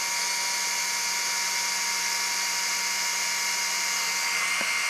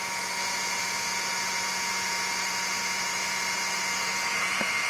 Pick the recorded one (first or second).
first